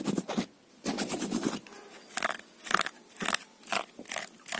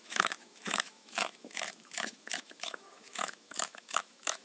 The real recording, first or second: first